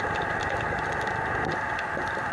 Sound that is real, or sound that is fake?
real